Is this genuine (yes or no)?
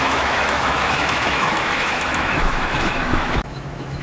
no